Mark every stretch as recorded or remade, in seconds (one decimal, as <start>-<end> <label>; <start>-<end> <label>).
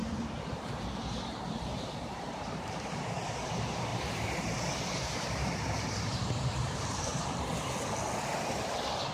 0.0-2.8 remade; 2.8-3.9 recorded; 3.9-7.4 remade; 7.4-9.1 recorded